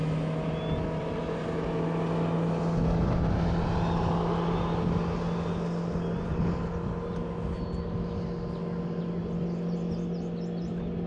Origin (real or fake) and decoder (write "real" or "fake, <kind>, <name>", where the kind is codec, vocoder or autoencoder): real